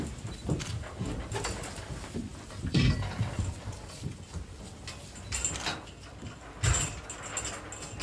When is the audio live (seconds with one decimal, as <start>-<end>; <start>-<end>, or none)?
0.0-2.3; 2.8-8.0